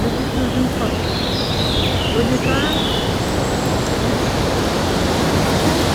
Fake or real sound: real